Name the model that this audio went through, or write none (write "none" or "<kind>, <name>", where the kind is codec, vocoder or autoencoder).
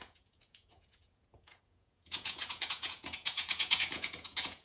vocoder, Vocos